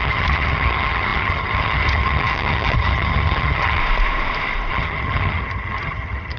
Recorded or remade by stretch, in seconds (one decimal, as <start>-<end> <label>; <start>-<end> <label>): 0.0-3.8 remade; 3.8-4.7 recorded; 4.7-6.4 remade